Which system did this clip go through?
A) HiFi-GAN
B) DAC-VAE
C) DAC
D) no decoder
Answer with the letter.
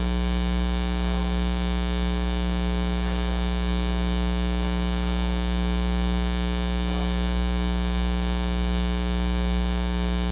C